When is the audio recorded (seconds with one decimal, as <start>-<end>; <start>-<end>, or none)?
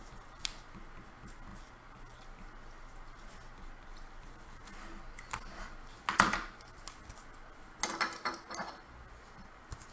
0.0-9.9